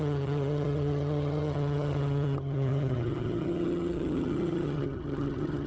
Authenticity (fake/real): fake